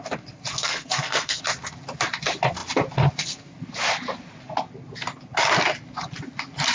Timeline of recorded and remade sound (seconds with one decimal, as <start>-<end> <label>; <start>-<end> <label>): 0.0-0.5 recorded; 0.5-1.4 remade; 1.4-6.7 recorded